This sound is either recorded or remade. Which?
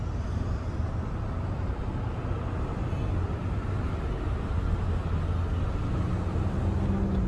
recorded